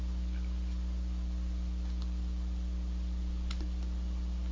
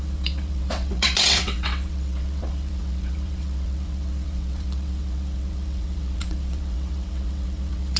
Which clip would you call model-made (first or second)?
second